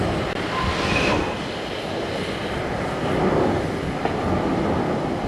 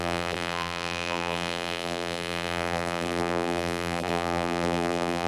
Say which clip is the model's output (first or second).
second